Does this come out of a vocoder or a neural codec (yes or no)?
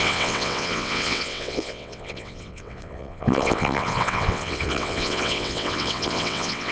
yes